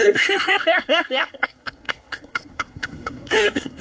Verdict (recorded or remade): remade